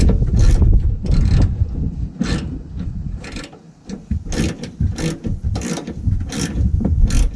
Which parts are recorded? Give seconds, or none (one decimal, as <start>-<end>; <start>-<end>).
0.0-7.4